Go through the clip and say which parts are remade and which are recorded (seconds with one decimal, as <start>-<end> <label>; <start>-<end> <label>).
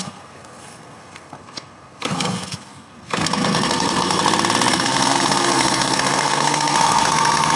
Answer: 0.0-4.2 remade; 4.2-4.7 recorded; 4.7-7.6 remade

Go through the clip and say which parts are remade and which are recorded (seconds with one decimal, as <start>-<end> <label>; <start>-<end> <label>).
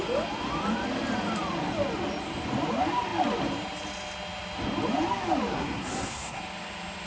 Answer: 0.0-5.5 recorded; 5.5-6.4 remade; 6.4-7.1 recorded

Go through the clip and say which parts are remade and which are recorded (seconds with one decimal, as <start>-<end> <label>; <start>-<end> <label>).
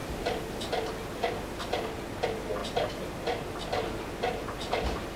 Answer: 0.0-5.2 recorded